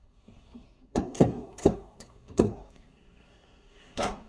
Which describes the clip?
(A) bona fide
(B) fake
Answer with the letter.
B